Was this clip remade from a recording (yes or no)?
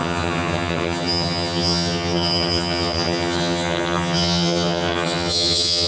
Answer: yes